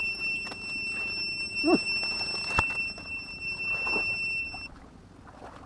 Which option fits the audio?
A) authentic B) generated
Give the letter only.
A